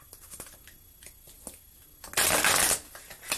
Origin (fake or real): real